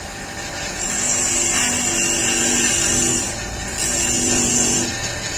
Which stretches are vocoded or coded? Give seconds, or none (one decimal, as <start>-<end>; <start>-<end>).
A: 0.6-1.2; 2.2-2.7; 3.1-5.4